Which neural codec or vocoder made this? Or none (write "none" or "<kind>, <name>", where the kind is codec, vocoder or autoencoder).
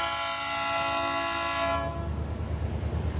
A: none